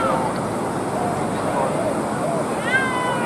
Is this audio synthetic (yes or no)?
no